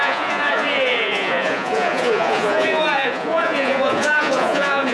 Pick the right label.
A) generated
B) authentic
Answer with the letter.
A